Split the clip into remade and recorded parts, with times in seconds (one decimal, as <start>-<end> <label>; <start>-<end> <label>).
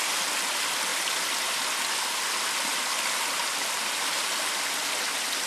0.0-5.5 recorded